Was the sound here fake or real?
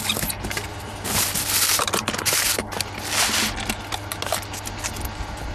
real